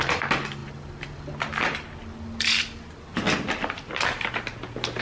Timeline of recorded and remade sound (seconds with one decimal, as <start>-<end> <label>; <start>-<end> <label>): 0.0-5.0 recorded